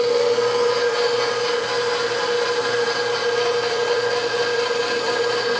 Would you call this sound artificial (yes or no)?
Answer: no